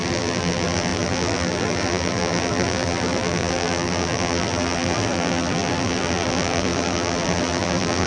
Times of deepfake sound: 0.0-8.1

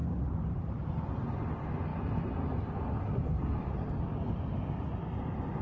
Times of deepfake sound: 0.0-1.0

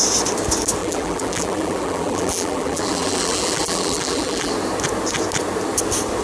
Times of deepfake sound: 0.8-4.5

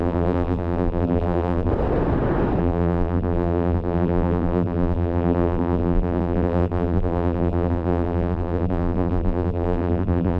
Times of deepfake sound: 0.0-1.7; 2.6-10.4

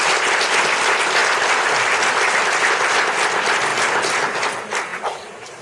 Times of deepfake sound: 4.9-5.6